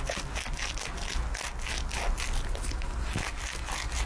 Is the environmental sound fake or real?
real